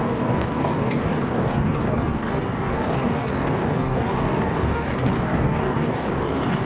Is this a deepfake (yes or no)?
yes